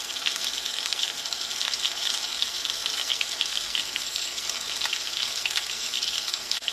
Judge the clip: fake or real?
fake